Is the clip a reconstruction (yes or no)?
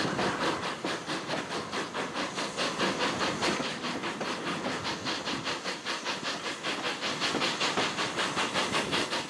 no